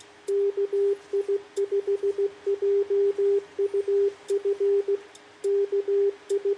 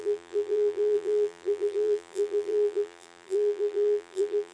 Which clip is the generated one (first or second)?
second